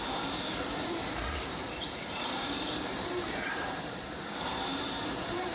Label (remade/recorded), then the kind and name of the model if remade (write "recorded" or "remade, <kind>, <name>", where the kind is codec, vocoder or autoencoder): remade, vocoder, BigVGAN v2